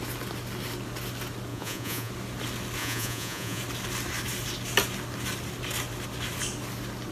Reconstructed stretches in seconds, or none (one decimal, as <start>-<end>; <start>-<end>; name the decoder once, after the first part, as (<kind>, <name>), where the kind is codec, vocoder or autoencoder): 1.5-2.1 (vocoder, Vocos); 2.8-3.6